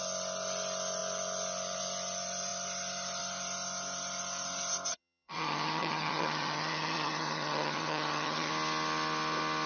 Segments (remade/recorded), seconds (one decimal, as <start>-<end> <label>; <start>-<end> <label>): 0.0-4.9 recorded; 4.9-8.5 remade; 8.5-9.7 recorded